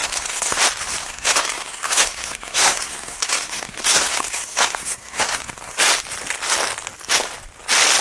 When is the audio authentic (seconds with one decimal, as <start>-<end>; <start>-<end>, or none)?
0.6-1.0; 5.7-8.0